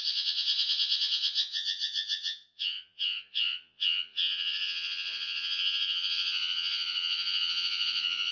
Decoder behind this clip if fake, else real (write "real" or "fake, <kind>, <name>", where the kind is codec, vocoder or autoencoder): fake, vocoder, Vocos